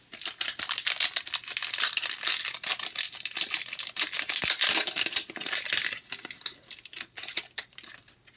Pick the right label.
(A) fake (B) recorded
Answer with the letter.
B